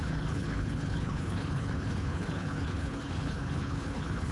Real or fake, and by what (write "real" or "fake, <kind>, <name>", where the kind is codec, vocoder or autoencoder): fake, codec, HILCodec